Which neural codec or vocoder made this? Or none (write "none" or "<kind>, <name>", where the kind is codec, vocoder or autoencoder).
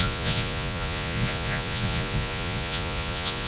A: vocoder, Vocos